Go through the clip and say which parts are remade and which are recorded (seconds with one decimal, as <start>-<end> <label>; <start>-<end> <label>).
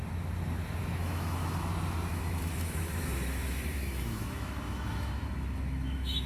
0.0-1.0 recorded; 1.0-1.7 remade; 1.7-2.1 recorded; 2.1-6.3 remade